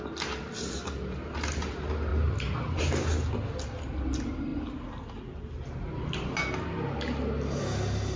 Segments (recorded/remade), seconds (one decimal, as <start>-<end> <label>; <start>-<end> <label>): 0.0-8.2 recorded